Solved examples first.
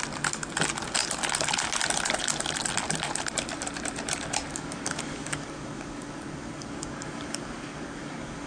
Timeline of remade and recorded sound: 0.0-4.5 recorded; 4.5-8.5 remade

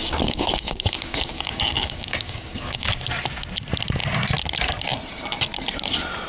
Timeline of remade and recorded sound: 0.0-2.9 remade; 2.9-6.3 recorded

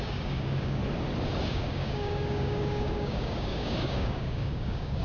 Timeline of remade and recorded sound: 0.0-0.8 remade; 0.8-1.5 recorded; 1.5-5.0 remade